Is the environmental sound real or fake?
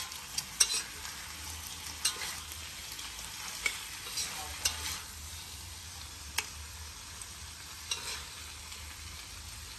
real